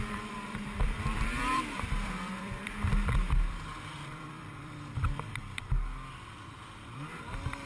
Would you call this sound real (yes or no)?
no